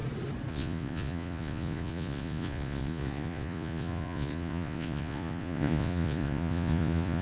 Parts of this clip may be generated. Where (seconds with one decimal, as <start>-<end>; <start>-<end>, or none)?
0.5-7.2